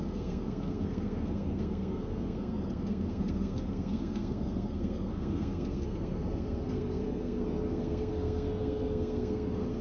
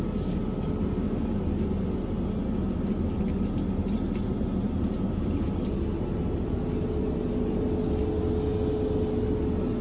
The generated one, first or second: first